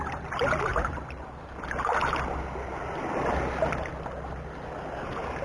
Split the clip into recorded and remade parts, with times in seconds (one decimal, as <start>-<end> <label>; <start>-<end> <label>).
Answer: 0.0-5.4 recorded